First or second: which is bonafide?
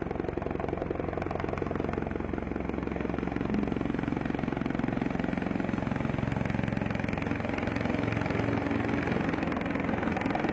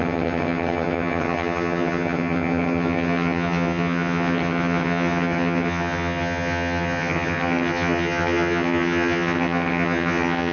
first